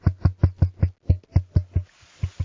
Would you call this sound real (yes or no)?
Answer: yes